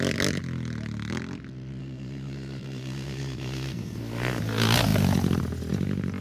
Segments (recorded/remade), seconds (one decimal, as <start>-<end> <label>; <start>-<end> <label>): 0.0-1.8 recorded; 1.8-4.4 remade; 4.4-6.2 recorded